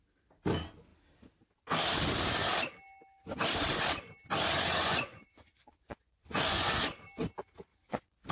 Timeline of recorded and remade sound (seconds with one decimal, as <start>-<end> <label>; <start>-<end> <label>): 0.0-4.8 recorded; 4.8-6.7 remade; 6.7-7.7 recorded; 7.7-8.3 remade